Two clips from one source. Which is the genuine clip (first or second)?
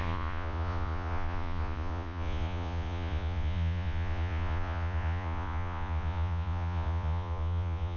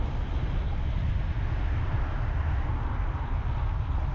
second